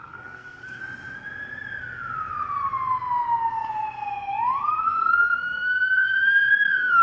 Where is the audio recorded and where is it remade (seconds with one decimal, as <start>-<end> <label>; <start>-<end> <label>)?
0.0-0.8 remade; 0.8-4.7 recorded; 4.7-7.0 remade